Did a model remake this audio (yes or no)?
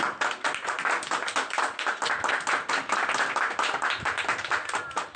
no